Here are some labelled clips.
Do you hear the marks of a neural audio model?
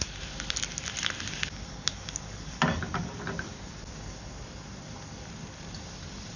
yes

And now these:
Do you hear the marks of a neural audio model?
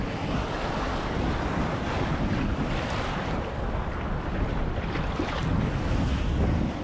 no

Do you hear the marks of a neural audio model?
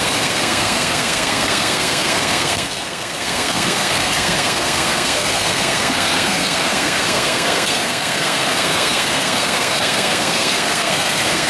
yes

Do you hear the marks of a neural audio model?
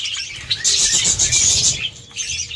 no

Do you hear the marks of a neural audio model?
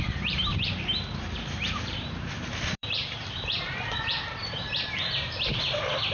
yes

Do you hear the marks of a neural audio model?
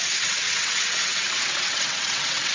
yes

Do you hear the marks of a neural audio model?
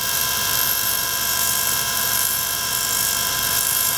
yes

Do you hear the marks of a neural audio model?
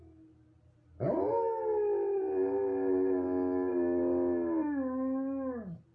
no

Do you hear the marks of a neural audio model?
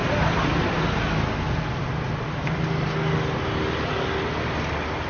no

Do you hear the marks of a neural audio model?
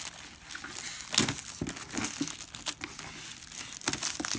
no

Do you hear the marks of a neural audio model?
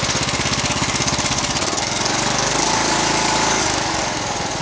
yes